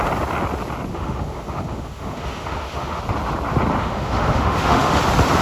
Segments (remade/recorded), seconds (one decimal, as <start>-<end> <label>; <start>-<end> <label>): 0.0-0.9 recorded; 0.9-3.0 remade; 3.0-3.8 recorded; 3.8-5.0 remade; 5.0-5.4 recorded